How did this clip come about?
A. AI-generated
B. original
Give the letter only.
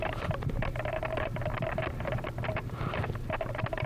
B